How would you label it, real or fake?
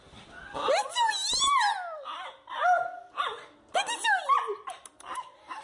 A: real